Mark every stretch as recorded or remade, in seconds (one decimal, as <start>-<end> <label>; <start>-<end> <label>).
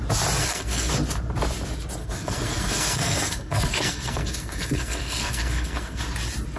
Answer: 0.0-0.4 recorded; 0.4-0.9 remade; 0.9-2.0 recorded; 2.0-6.0 remade; 6.0-6.6 recorded